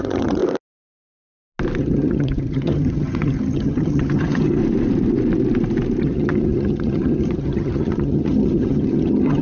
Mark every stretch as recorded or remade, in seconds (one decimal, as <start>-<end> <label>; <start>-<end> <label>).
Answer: 0.0-0.4 remade; 0.4-1.8 recorded; 1.8-4.6 remade; 4.6-6.0 recorded; 6.0-9.4 remade